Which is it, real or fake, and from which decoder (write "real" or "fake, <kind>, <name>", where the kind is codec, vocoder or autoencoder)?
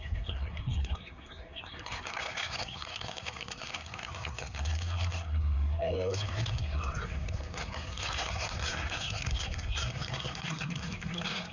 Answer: fake, codec, SNAC